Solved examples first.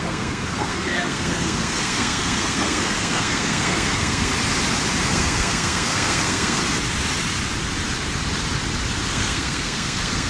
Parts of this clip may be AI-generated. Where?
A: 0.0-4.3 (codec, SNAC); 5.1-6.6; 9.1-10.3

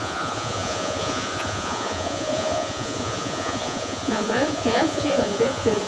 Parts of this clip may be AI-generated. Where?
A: 0.0-5.9 (vocoder, Vocos)

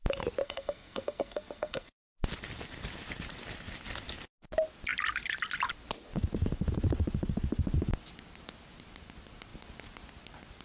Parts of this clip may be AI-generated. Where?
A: 0.4-2.1 (codec, SNAC)